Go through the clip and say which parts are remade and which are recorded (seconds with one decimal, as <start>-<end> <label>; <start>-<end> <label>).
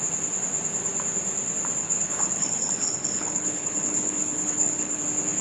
0.0-1.8 recorded; 1.8-5.0 remade; 5.0-5.4 recorded